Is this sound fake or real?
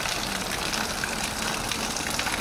real